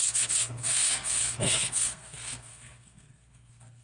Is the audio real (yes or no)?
no